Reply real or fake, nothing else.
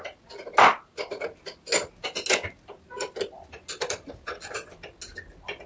real